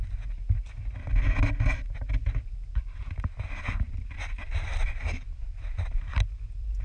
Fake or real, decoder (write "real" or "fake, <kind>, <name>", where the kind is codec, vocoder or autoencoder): real